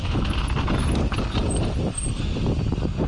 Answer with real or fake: real